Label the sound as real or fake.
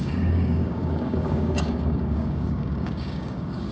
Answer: fake